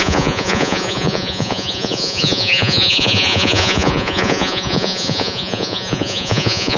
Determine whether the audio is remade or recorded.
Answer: remade